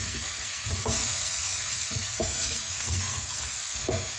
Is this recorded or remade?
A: remade